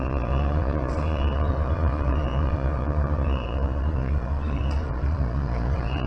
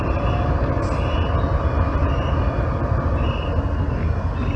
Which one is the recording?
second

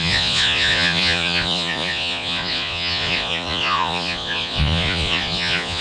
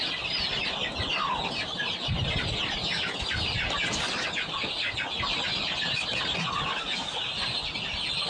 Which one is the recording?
second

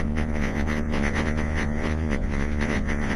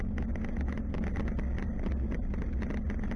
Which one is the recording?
second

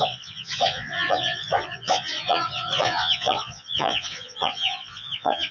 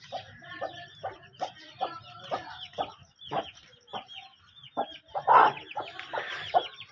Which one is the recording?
second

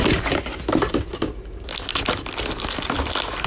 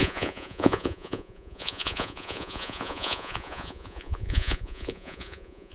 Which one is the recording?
first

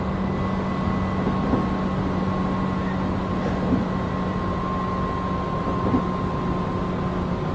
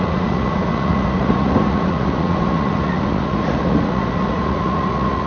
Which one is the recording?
first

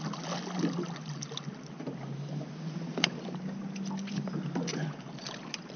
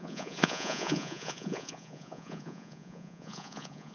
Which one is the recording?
first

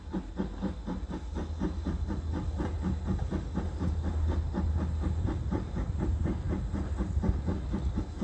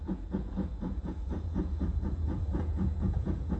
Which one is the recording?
first